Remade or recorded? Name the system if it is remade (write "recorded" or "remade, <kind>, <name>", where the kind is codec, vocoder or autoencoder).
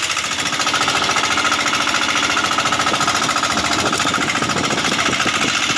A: recorded